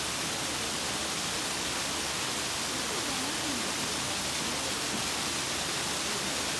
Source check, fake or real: real